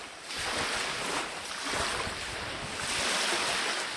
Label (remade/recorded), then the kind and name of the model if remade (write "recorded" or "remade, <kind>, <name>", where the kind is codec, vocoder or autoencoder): recorded